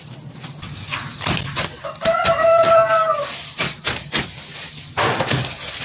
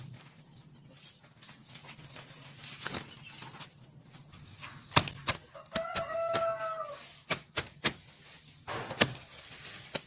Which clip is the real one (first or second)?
second